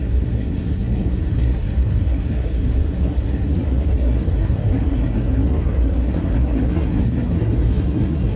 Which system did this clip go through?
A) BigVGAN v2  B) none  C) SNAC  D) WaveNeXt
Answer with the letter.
C